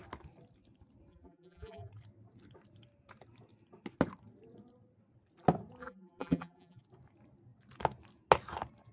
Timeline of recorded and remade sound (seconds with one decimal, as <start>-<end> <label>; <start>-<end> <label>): 0.0-1.1 recorded; 1.1-1.9 remade; 1.9-5.8 recorded; 5.8-6.8 remade; 6.8-8.9 recorded